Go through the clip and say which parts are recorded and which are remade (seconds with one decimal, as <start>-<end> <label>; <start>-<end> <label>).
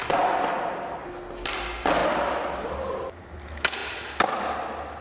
0.0-5.0 recorded